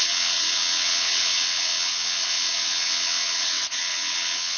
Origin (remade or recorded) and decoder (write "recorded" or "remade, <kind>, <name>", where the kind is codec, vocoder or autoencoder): remade, vocoder, WaveNeXt